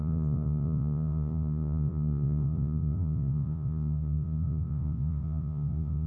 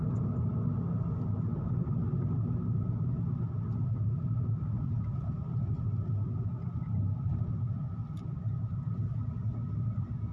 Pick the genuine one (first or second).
second